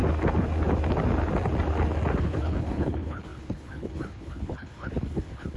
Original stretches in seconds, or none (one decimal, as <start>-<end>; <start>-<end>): 0.0-2.2